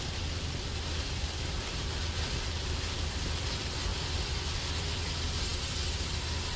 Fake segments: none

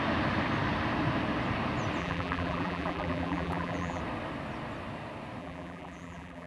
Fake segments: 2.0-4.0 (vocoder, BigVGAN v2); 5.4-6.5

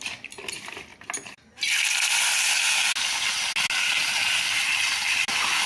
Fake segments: 0.0-0.9 (vocoder, BigVGAN v2); 4.0-5.7